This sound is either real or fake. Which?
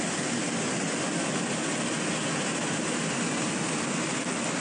real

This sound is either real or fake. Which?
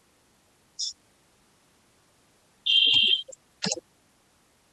real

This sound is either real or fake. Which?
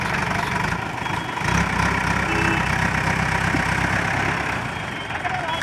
real